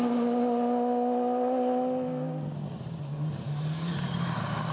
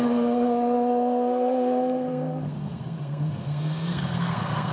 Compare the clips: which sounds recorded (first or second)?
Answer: first